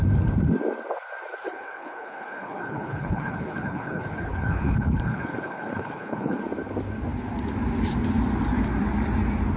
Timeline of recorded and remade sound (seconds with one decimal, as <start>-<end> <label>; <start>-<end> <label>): 0.0-1.4 recorded; 1.4-6.4 remade; 6.4-9.6 recorded